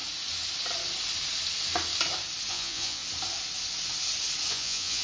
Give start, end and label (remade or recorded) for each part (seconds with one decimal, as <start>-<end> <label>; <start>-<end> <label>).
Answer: 0.0-2.5 recorded; 2.5-3.0 remade; 3.0-4.5 recorded; 4.5-5.0 remade